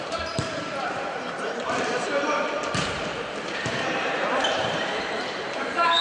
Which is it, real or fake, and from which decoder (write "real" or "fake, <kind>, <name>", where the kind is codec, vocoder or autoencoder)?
fake, vocoder, BigVGAN v2